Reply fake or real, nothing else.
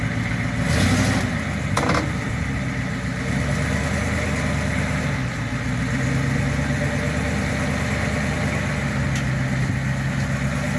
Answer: real